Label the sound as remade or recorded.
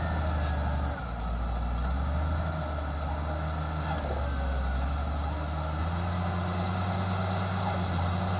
recorded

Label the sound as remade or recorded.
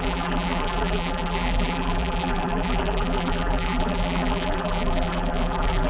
remade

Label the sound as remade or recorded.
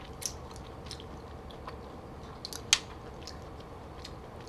recorded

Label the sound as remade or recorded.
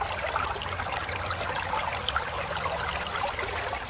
recorded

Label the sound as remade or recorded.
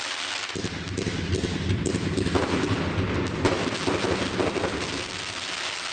recorded